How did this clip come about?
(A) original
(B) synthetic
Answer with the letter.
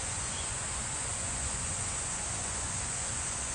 B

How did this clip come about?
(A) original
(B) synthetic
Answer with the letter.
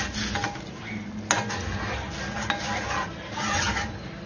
A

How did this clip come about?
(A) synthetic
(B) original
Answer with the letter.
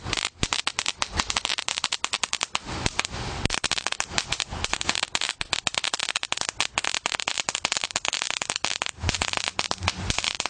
B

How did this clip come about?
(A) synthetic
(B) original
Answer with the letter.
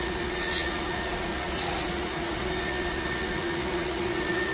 A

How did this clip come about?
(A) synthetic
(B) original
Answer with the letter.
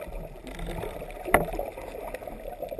B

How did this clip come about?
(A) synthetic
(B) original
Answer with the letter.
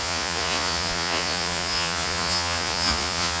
A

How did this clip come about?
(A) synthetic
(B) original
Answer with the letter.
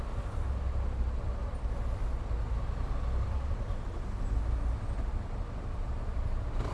B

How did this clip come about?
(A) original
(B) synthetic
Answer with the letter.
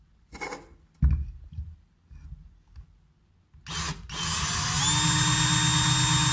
A